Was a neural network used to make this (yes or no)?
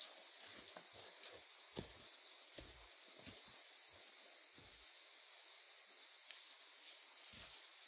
no